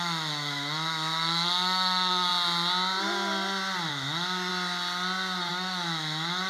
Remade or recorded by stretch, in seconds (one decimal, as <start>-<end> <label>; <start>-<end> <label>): 0.0-2.3 remade; 2.3-3.9 recorded; 3.9-4.5 remade; 4.5-5.5 recorded; 5.5-6.5 remade